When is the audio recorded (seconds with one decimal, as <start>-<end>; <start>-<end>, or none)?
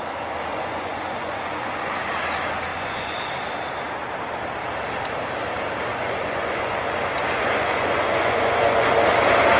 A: 0.0-0.5; 2.0-2.7; 3.3-5.9; 8.9-9.6